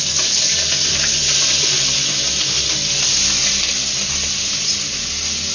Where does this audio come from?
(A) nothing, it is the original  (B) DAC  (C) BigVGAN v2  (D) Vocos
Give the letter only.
A